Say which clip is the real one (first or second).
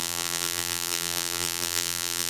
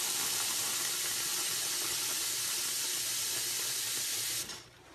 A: second